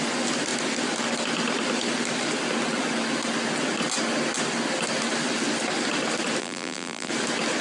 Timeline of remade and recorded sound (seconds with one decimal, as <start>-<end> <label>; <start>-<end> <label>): 0.0-6.4 recorded; 6.4-7.1 remade; 7.1-7.6 recorded